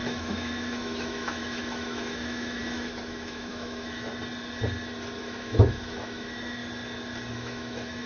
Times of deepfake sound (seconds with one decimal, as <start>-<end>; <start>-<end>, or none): 0.0-4.1; 5.2-6.6; 7.3-8.1